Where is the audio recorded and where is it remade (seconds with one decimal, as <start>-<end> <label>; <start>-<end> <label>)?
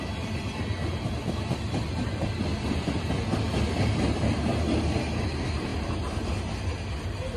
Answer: 0.0-2.5 recorded; 2.5-3.1 remade; 3.1-7.4 recorded